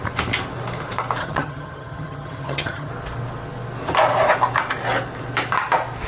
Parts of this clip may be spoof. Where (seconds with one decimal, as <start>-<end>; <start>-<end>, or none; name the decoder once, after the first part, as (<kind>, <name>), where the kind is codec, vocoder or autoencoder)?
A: 1.2-2.9 (vocoder, HiFi-GAN)